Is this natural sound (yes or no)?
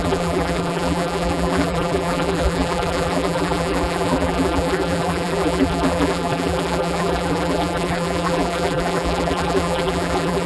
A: no